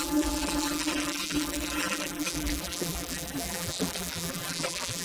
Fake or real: fake